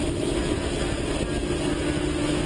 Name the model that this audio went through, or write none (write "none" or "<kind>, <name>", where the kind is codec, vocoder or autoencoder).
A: none